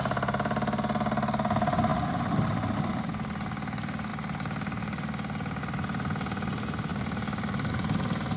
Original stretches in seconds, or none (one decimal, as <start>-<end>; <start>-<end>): 0.0-8.4